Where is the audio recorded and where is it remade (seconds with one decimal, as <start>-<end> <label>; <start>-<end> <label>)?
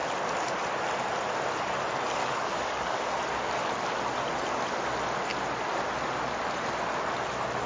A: 0.0-2.2 recorded; 2.2-3.0 remade; 3.0-7.7 recorded